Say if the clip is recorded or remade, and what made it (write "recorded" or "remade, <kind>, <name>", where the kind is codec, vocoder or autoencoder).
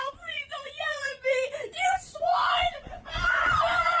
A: remade, vocoder, Vocos